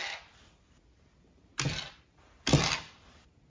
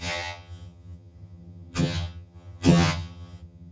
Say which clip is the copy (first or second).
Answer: second